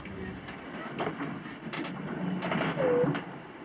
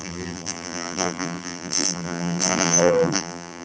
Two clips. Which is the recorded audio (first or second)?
first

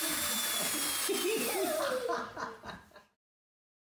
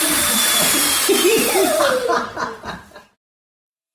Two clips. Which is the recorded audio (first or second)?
first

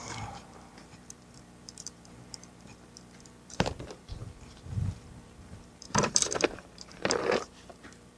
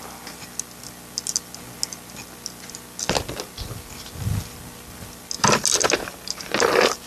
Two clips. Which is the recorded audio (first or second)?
second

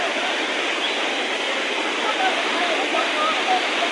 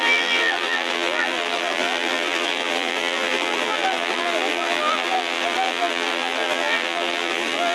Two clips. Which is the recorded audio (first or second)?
first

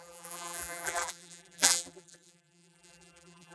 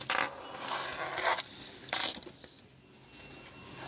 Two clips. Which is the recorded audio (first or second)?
second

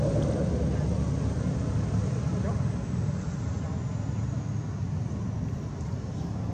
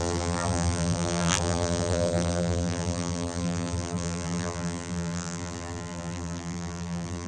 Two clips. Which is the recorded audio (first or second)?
first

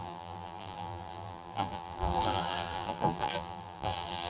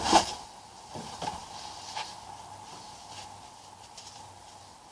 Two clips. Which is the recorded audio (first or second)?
second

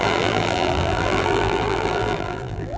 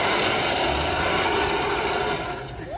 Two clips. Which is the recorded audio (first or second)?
second